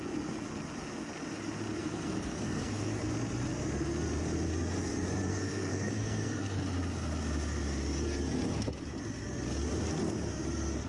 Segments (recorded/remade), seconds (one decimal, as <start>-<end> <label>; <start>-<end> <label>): 0.0-1.8 recorded; 1.8-3.0 remade; 3.0-5.3 recorded; 5.3-6.6 remade; 6.6-10.9 recorded